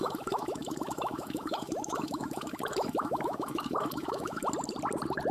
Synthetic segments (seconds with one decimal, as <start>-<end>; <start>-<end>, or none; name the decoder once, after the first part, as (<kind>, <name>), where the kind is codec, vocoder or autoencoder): 0.0-4.4 (autoencoder, DAC-VAE)